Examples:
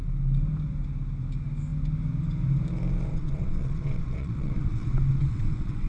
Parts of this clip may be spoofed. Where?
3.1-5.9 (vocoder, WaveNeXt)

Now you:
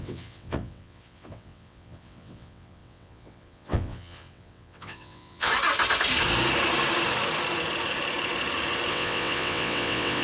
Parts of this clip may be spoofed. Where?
0.0-5.5 (vocoder, WaveNeXt); 8.9-10.2

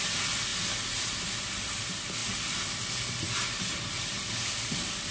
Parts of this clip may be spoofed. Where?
none

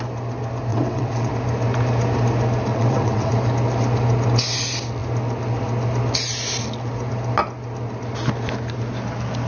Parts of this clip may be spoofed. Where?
0.7-1.3 (vocoder, WaveNeXt); 2.7-3.3

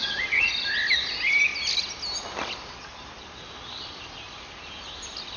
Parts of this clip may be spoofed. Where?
0.0-0.5 (vocoder, WaveNeXt)

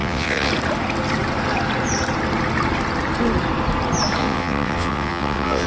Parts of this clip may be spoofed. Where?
0.0-0.5 (vocoder, WaveNeXt); 4.2-5.7

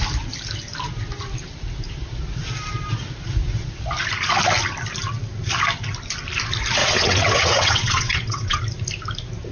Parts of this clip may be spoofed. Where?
6.8-8.6 (vocoder, WaveNeXt)